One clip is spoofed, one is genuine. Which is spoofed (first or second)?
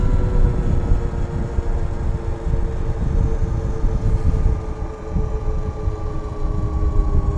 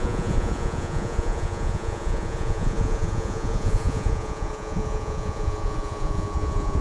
second